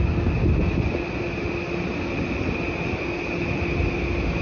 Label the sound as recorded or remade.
recorded